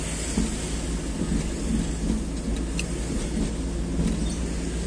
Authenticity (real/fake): real